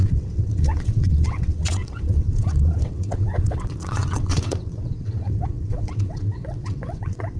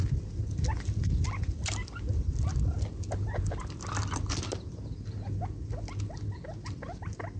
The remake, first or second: first